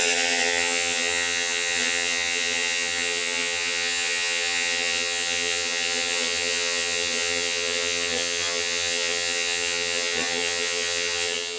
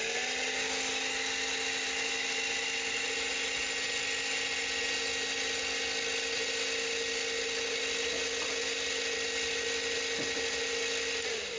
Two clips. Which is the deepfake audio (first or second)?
first